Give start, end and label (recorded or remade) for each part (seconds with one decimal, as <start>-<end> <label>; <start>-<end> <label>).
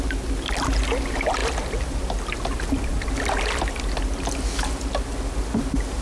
0.0-6.0 recorded